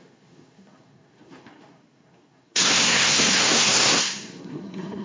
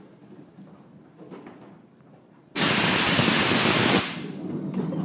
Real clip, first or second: second